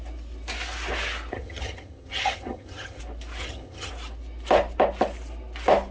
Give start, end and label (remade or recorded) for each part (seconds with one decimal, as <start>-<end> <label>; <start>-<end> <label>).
0.0-1.3 recorded; 1.3-3.0 remade; 3.0-3.4 recorded; 3.4-3.9 remade; 3.9-5.9 recorded

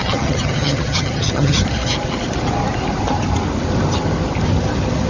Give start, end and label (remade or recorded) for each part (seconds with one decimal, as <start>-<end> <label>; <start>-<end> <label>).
0.0-1.6 remade; 1.6-5.1 recorded